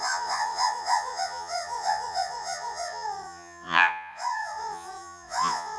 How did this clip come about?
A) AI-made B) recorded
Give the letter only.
A